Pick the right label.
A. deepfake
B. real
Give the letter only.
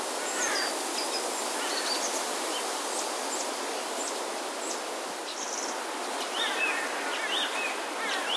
B